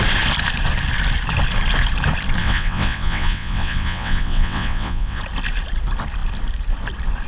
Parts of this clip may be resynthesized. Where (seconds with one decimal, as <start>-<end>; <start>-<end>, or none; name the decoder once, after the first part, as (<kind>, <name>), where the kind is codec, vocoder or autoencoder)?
2.4-5.2 (vocoder, WaveNeXt)